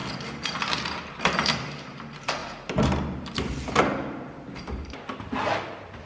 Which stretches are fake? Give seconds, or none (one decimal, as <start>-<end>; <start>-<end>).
none